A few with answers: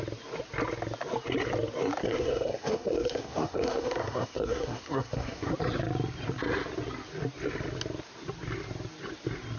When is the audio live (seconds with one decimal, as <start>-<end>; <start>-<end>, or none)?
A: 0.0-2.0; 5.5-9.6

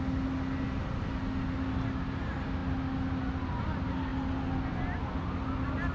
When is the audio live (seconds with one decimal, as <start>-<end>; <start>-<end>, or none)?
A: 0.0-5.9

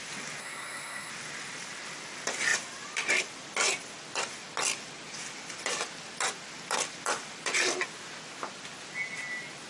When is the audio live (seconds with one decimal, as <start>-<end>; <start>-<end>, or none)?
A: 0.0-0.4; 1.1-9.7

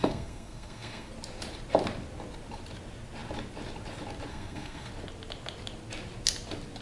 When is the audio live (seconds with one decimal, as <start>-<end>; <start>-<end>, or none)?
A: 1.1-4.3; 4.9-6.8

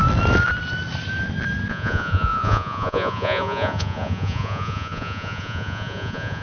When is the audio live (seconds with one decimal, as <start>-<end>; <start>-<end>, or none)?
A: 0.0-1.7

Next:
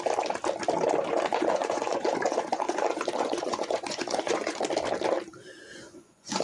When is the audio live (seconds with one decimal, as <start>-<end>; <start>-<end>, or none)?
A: 0.0-1.3; 4.7-5.7